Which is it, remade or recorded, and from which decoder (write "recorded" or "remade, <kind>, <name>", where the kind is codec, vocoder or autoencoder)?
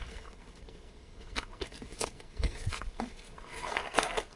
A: remade, codec, SNAC